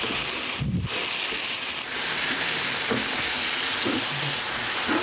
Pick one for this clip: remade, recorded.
recorded